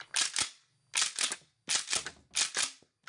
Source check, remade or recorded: recorded